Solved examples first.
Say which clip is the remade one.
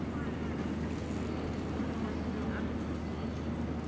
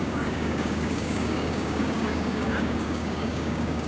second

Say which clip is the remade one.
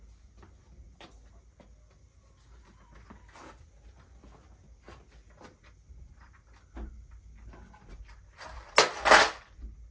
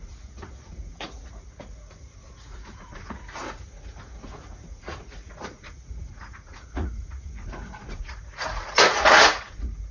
second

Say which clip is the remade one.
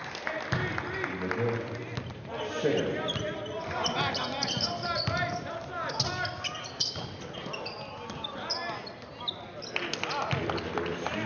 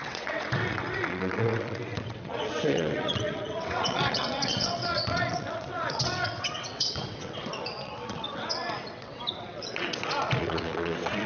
second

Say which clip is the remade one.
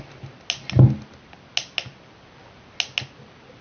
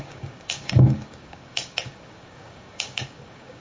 second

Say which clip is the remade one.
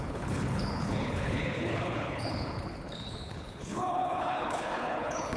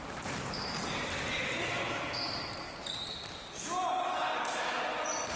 first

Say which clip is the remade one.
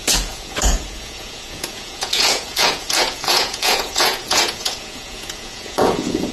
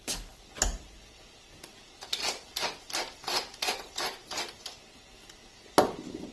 first